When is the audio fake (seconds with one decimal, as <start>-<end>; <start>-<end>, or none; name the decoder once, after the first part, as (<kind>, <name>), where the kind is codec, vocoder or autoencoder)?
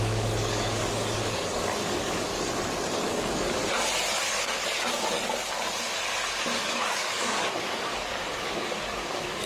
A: 0.0-2.3 (codec, DAC); 3.1-3.6; 6.6-9.5